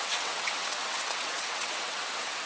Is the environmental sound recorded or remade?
remade